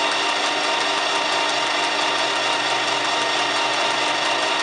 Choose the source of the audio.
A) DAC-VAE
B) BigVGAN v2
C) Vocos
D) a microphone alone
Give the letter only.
D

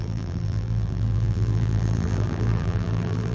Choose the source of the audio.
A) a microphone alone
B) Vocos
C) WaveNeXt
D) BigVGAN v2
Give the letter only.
D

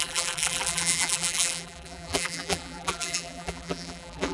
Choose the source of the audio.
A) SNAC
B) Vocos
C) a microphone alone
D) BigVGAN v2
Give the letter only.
D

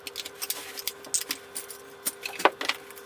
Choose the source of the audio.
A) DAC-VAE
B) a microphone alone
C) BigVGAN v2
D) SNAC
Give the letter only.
B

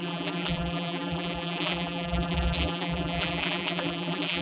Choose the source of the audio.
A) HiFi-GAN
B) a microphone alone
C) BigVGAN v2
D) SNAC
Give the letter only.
C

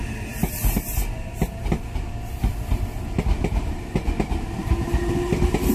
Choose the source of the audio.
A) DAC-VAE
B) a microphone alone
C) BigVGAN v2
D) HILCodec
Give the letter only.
B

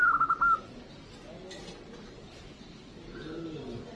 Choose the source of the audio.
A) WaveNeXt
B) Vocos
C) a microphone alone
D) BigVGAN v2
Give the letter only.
C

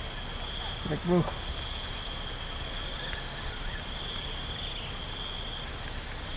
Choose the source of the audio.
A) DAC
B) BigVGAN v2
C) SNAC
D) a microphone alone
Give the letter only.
D